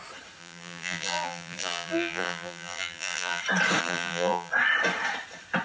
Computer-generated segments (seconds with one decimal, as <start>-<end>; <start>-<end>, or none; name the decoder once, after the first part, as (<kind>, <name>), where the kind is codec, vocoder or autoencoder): 0.4-3.4 (vocoder, BigVGAN v2); 3.8-4.5